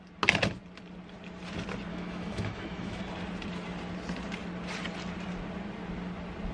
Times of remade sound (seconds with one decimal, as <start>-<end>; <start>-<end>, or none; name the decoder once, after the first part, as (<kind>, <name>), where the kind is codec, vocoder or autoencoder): 1.9-3.0 (autoencoder, DAC-VAE)

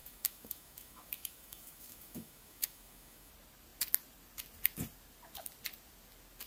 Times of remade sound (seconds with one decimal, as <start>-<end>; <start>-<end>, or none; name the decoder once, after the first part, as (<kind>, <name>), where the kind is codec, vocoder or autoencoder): 0.0-3.3 (autoencoder, DAC-VAE)

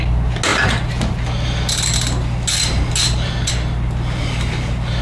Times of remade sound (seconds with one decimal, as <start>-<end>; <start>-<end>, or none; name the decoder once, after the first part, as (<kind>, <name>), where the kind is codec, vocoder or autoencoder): none

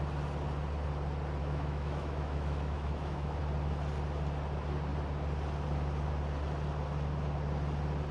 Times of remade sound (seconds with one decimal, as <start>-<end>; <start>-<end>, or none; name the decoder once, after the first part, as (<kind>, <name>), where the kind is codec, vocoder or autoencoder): 1.4-3.4 (autoencoder, DAC-VAE)

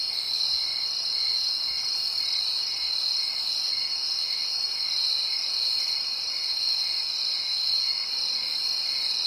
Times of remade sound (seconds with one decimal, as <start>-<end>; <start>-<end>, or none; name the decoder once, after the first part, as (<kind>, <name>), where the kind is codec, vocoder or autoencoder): 3.8-4.5 (autoencoder, DAC-VAE); 6.3-8.1

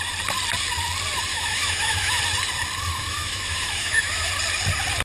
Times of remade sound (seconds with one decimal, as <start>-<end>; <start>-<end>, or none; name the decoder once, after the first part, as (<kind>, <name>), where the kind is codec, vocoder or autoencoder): 1.3-2.2 (autoencoder, DAC-VAE); 2.9-4.3

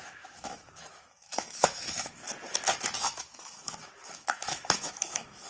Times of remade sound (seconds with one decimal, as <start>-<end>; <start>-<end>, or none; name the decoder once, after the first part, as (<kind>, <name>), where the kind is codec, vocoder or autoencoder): 0.0-2.2 (autoencoder, DAC-VAE); 3.0-5.5

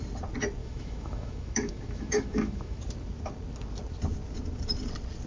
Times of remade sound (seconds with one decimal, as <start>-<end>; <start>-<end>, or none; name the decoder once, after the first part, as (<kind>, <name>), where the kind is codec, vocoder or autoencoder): 0.6-2.8 (autoencoder, DAC-VAE)